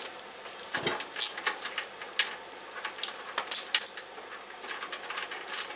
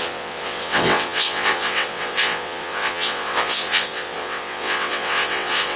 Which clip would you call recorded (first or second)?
first